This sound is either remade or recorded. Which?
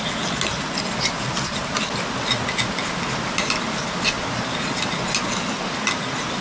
recorded